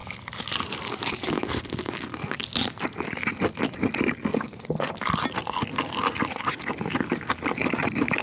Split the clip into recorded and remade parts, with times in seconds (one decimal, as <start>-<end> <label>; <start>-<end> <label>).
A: 0.0-4.3 recorded; 4.3-4.9 remade; 4.9-8.2 recorded